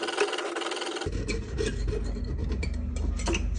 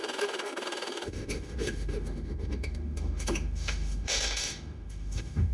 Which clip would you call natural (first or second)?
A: first